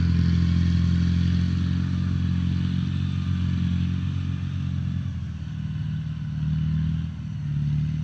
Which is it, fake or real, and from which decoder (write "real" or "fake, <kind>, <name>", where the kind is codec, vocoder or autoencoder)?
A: real